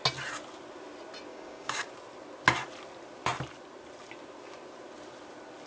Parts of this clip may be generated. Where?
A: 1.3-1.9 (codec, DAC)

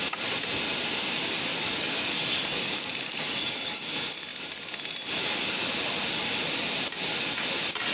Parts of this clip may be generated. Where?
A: 1.5-3.8 (codec, DAC)

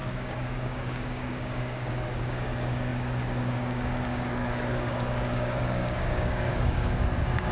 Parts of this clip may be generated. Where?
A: 0.0-7.5 (codec, DAC)

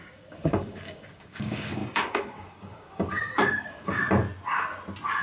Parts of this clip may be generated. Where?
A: 0.0-4.0 (codec, DAC)

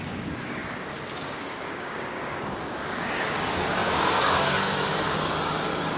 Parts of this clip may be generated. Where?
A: 0.0-6.0 (codec, DAC)

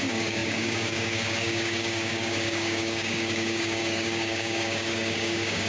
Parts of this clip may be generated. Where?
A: 0.0-5.7 (codec, DAC)

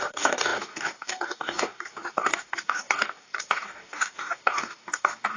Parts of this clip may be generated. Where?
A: 0.0-5.4 (codec, DAC)